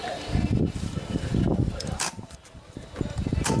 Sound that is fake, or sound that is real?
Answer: fake